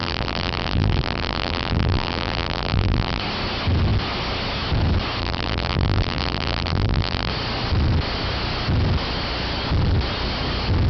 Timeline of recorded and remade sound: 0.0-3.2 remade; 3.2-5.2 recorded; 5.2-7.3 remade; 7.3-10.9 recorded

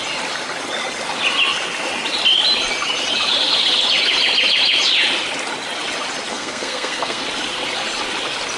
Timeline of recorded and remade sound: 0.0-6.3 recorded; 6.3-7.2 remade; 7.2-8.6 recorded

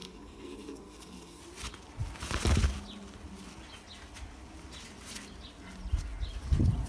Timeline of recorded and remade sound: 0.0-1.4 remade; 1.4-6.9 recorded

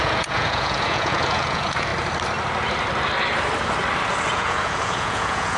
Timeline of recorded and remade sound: 0.0-1.9 remade; 1.9-4.3 recorded; 4.3-5.6 remade